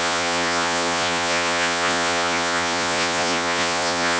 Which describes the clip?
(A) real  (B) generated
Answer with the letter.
B